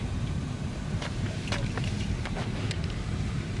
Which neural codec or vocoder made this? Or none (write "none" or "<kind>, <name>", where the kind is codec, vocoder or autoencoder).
vocoder, BigVGAN v2